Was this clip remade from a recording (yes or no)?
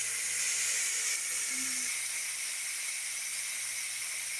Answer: no